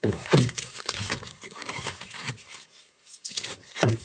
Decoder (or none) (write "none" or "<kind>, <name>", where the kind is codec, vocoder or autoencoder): codec, SNAC